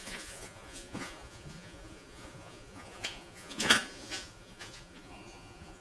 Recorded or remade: remade